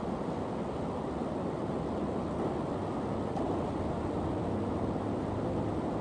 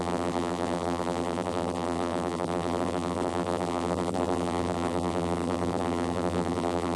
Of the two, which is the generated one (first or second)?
second